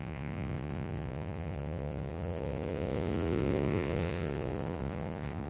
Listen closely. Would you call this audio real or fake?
fake